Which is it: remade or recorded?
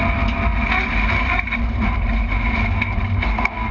recorded